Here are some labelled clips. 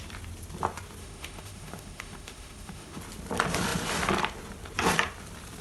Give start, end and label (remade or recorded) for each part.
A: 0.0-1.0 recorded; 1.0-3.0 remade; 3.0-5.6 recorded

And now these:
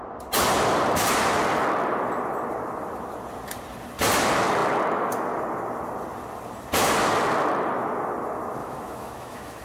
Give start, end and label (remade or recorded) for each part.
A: 0.0-8.6 recorded; 8.6-9.6 remade

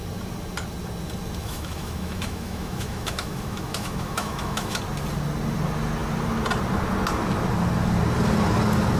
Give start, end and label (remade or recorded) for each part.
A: 0.0-1.4 recorded; 1.4-4.8 remade; 4.8-9.0 recorded

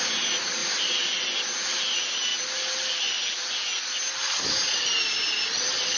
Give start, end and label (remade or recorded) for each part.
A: 0.0-6.0 recorded